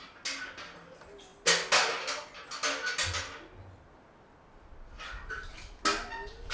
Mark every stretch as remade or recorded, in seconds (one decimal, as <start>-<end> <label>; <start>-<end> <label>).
0.0-6.5 recorded